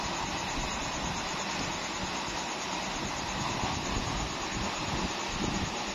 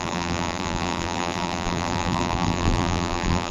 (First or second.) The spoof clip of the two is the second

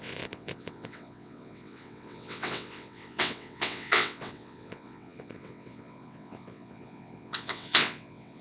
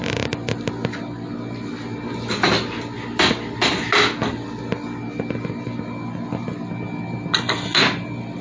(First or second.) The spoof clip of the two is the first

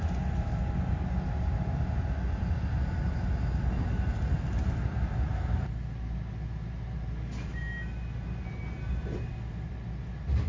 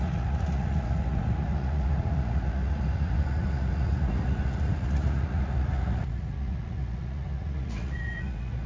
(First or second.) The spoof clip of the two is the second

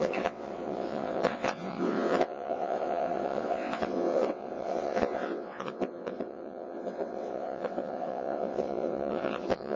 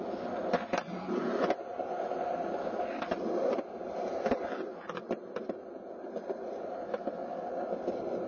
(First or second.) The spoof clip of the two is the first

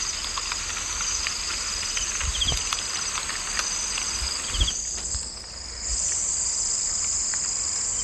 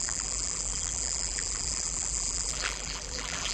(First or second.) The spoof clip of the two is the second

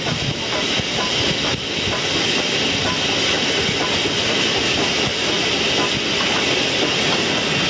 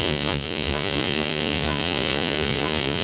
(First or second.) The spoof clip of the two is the second